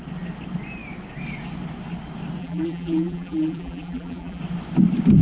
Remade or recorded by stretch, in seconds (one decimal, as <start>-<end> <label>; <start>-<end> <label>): 0.0-2.4 recorded; 2.4-4.4 remade; 4.4-5.2 recorded